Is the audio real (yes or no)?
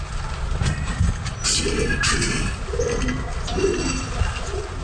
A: yes